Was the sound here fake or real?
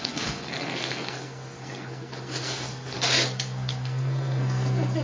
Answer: fake